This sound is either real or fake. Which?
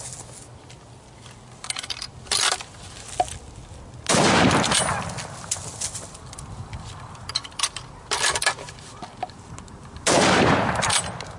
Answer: real